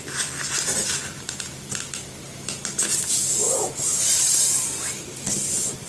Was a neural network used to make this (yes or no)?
no